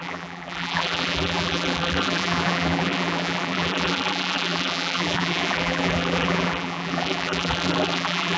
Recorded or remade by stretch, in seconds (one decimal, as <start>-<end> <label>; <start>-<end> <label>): 0.0-8.4 remade